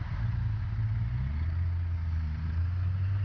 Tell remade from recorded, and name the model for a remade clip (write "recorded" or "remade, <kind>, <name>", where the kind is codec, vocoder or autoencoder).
recorded